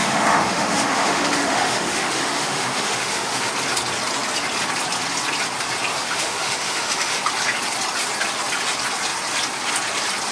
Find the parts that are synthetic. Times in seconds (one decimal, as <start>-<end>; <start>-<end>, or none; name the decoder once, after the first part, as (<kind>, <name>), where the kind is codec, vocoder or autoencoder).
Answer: 0.0-3.5 (autoencoder, DAC-VAE); 5.9-7.2